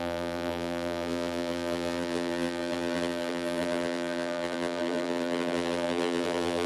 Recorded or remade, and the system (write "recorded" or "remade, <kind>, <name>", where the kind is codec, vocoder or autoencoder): remade, vocoder, BigVGAN v2